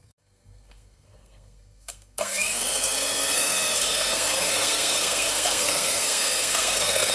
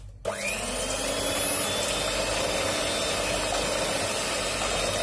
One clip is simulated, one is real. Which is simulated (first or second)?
first